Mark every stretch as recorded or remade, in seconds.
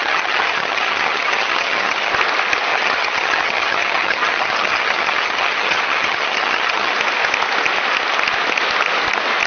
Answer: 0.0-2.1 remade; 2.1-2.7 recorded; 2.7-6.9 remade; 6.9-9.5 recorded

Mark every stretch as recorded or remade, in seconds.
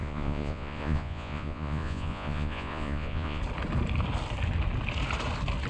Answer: 0.0-3.4 remade; 3.4-5.7 recorded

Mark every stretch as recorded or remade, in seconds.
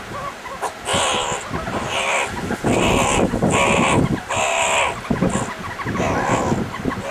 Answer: 0.0-7.1 recorded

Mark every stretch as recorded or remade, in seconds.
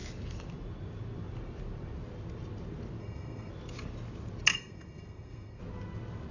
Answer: 0.0-3.0 recorded; 3.0-3.5 remade; 3.5-4.5 recorded; 4.5-5.6 remade; 5.6-6.3 recorded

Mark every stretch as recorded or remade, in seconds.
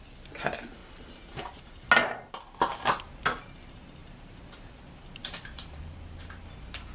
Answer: 0.0-0.8 recorded; 0.8-1.7 remade; 1.7-4.0 recorded; 4.0-4.7 remade; 4.7-5.2 recorded; 5.2-5.8 remade; 5.8-6.9 recorded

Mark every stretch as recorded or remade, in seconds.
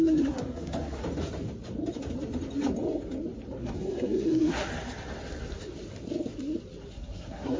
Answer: 0.0-1.0 remade; 1.0-3.6 recorded; 3.6-4.7 remade; 4.7-6.9 recorded; 6.9-7.6 remade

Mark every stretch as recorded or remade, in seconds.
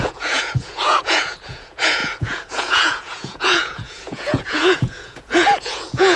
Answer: 0.0-6.2 remade